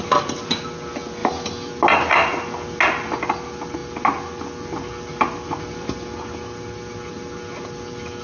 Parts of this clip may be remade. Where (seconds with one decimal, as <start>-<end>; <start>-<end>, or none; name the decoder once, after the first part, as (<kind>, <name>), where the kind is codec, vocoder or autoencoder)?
none